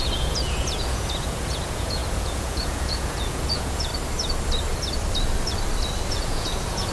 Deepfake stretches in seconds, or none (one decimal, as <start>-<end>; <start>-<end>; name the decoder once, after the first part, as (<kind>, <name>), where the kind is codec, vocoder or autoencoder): 0.0-3.9 (vocoder, Vocos); 6.1-6.9